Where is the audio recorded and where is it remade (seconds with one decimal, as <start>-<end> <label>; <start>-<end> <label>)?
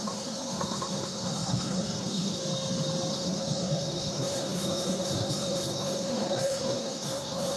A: 0.0-2.4 remade; 2.4-3.1 recorded; 3.1-7.6 remade